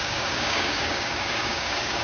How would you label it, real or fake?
fake